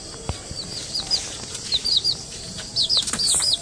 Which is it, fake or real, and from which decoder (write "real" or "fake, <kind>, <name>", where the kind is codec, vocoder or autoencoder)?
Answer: fake, vocoder, BigVGAN v2